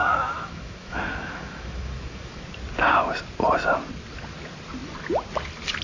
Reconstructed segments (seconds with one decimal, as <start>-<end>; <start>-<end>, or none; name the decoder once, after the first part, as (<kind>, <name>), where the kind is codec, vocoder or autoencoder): 0.0-2.4 (autoencoder, DAC-VAE)